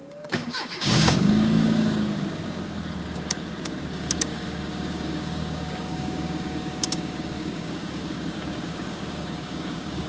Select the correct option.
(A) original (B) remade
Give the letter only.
B